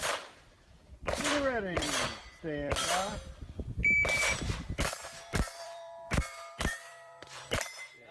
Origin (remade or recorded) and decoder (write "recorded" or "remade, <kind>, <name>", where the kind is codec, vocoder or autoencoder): remade, vocoder, BigVGAN v2